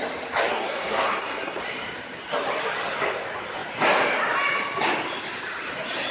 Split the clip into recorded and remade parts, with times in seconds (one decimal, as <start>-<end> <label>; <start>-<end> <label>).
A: 0.0-0.5 recorded; 0.5-1.6 remade; 1.6-6.1 recorded